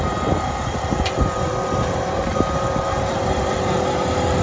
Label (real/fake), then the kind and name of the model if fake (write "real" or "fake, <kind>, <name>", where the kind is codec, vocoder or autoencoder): real